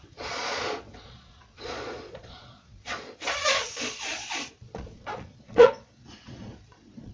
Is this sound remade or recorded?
remade